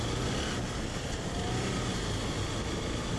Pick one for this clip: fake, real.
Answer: real